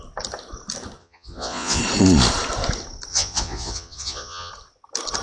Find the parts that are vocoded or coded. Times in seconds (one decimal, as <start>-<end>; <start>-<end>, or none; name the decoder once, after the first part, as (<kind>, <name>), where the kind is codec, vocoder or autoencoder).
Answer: 1.0-1.8 (vocoder, Vocos); 3.1-4.5